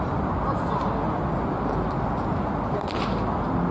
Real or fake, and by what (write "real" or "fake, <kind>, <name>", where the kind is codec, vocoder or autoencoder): real